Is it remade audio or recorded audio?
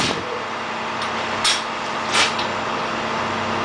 recorded